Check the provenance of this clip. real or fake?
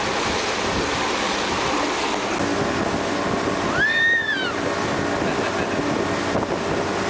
real